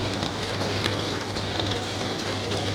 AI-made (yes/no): yes